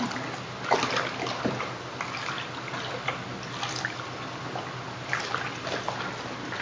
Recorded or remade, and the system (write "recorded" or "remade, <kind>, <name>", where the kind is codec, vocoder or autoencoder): recorded